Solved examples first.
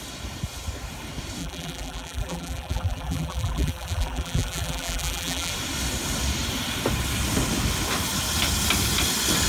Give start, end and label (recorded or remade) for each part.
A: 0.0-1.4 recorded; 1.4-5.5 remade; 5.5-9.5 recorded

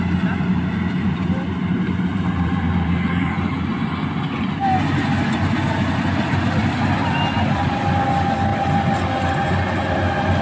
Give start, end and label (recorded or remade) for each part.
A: 0.0-2.1 recorded; 2.1-3.5 remade; 3.5-6.6 recorded; 6.6-7.6 remade; 7.6-8.5 recorded; 8.5-9.3 remade; 9.3-10.4 recorded

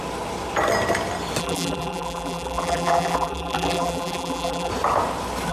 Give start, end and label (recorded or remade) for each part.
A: 0.0-1.4 recorded; 1.4-4.7 remade; 4.7-5.5 recorded

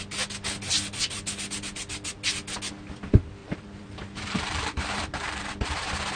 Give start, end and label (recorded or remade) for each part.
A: 0.0-3.4 recorded; 3.4-5.5 remade; 5.5-6.2 recorded

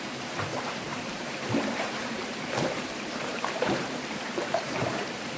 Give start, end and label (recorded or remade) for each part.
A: 0.0-5.4 remade

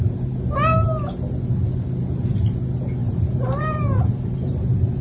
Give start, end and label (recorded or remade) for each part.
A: 0.0-3.0 recorded; 3.0-4.6 remade; 4.6-5.0 recorded

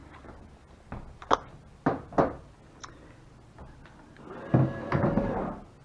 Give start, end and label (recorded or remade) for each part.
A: 0.0-5.8 recorded